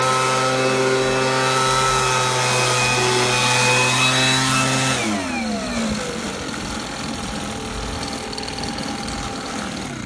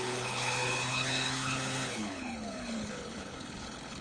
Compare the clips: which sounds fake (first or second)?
second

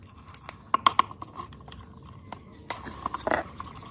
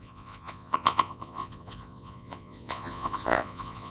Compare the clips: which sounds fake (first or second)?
second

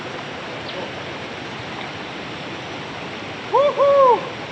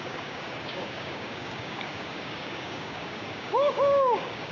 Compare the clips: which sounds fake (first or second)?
second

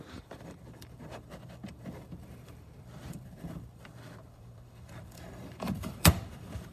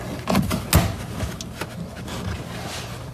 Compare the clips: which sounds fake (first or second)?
first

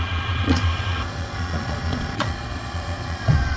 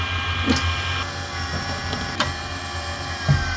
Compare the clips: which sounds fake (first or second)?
first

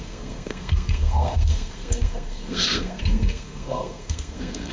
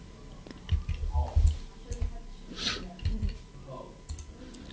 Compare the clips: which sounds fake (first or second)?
first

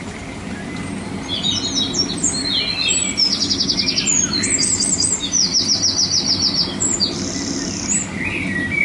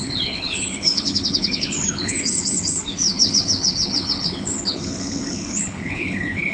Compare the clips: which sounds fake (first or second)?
second